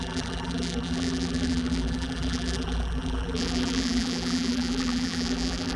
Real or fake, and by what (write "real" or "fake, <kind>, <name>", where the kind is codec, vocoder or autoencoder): fake, vocoder, BigVGAN v2